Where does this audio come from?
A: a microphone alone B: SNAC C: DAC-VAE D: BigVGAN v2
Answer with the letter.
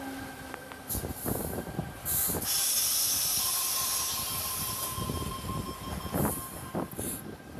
A